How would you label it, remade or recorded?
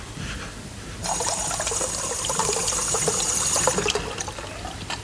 recorded